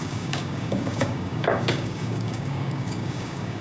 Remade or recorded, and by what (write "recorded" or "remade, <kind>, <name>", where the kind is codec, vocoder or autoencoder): remade, codec, DAC